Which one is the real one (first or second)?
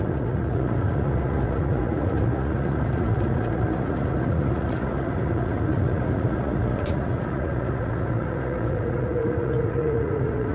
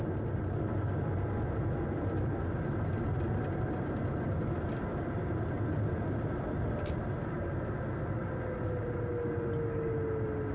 second